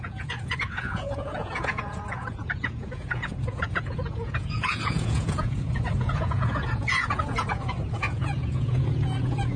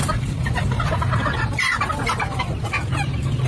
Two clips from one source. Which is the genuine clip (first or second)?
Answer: second